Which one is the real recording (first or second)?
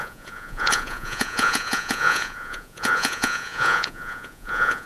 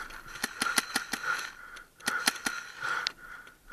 second